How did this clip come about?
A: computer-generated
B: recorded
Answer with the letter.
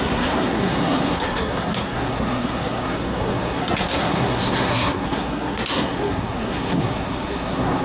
A